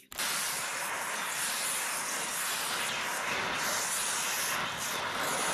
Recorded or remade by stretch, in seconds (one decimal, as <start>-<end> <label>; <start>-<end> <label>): 0.0-5.5 recorded